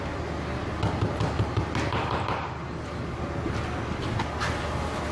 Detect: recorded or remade recorded